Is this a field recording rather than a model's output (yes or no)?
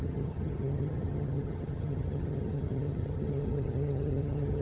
no